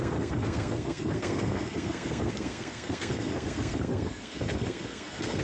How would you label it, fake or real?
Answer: fake